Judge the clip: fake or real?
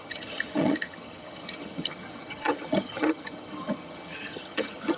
fake